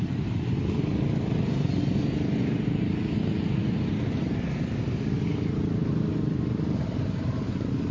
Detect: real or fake real